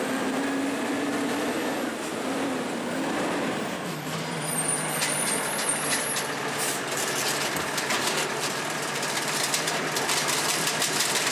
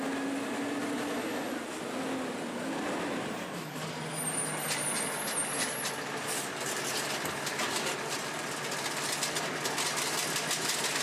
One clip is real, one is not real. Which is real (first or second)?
second